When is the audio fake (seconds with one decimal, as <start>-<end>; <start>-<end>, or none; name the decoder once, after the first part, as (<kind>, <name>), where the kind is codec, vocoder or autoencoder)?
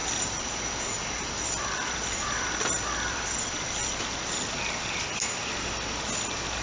0.0-4.0 (vocoder, BigVGAN v2)